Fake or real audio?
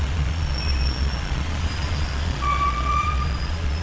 fake